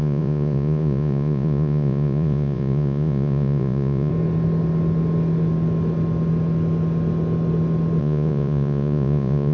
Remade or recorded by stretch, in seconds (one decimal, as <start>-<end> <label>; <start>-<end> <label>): 0.0-4.1 remade; 4.1-8.0 recorded; 8.0-9.5 remade